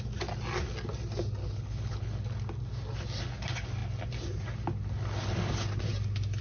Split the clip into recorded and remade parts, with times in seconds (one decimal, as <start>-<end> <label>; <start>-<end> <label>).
0.0-1.4 recorded; 1.4-2.1 remade; 2.1-6.4 recorded